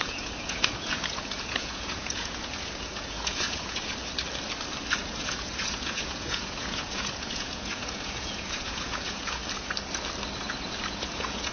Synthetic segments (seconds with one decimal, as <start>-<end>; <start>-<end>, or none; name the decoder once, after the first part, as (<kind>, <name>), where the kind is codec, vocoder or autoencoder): 0.0-3.9 (vocoder, Vocos); 5.0-9.4; 10.9-11.5